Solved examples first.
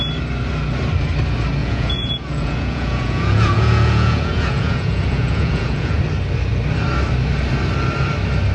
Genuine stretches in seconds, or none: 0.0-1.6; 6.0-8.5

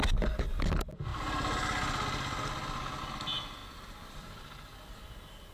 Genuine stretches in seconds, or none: 0.0-5.5

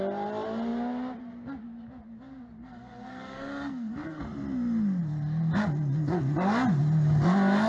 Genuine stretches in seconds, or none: 0.0-2.6; 4.2-7.7

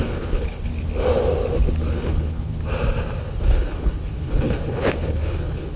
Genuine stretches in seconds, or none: 0.7-1.9; 2.5-3.2

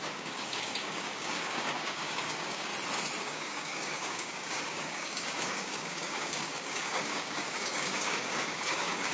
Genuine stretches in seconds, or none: 2.7-3.2

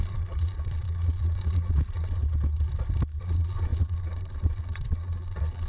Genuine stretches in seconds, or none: 2.2-3.2